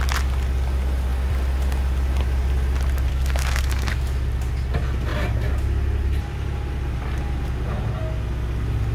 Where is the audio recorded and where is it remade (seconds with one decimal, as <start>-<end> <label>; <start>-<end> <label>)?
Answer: 0.0-3.1 recorded; 3.1-3.9 remade; 3.9-8.9 recorded